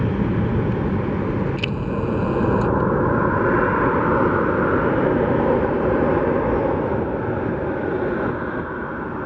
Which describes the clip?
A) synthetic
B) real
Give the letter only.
B